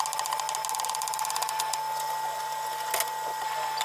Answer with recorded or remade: recorded